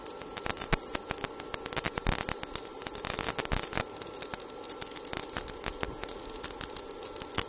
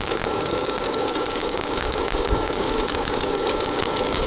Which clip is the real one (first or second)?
first